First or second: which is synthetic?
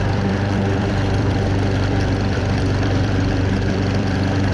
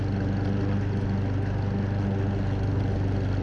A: first